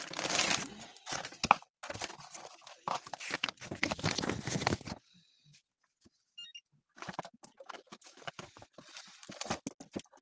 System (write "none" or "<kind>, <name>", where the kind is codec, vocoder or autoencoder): none